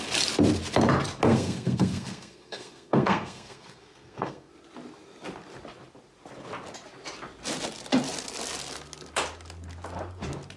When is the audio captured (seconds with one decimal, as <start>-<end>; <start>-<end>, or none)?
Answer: 0.0-1.3; 4.5-10.6